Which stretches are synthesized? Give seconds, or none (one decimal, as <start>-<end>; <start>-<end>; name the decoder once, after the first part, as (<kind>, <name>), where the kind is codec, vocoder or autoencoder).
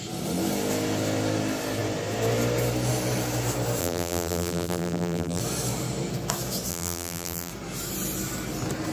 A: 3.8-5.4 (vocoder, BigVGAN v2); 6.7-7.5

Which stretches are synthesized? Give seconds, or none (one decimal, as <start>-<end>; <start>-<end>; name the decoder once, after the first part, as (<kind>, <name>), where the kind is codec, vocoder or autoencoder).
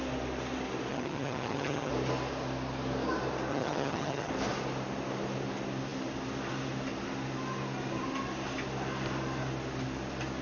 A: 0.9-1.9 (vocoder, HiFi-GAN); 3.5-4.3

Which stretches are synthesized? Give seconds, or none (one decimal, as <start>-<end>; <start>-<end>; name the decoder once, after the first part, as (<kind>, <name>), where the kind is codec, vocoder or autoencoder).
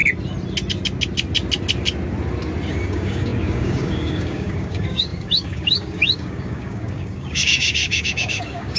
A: 2.7-8.8 (codec, DAC)